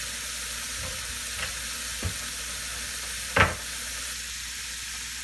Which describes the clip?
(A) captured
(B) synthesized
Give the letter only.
A